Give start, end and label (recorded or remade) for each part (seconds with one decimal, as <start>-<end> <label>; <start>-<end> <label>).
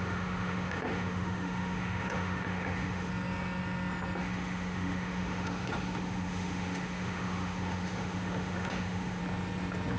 0.0-3.1 remade; 3.1-4.2 recorded; 4.2-9.2 remade; 9.2-10.0 recorded